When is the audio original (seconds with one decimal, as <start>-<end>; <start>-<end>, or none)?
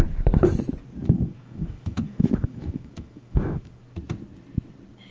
0.0-1.0; 3.8-5.1